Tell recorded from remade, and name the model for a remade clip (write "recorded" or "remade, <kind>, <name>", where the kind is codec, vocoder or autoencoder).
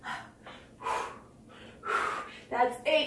recorded